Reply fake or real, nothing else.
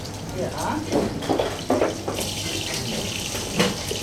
real